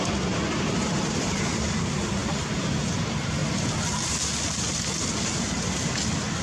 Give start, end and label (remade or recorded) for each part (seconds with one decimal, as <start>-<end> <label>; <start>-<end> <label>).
0.0-3.4 remade; 3.4-5.4 recorded; 5.4-6.4 remade